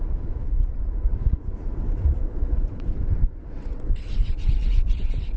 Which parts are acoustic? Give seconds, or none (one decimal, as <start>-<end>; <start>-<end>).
0.0-1.1